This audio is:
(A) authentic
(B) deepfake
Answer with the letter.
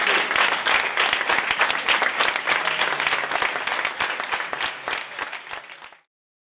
A